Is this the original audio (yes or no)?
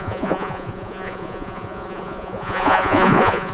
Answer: no